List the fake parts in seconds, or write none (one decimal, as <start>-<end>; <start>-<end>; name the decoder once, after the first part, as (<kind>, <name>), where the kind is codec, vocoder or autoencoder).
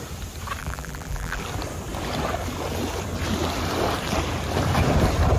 0.6-1.4 (vocoder, BigVGAN v2)